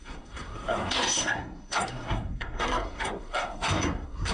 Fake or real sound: fake